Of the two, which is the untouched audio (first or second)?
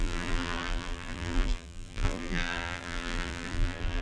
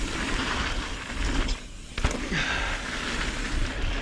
second